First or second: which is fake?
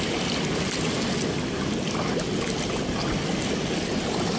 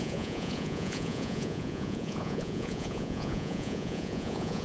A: second